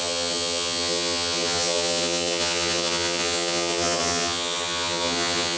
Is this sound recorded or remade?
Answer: remade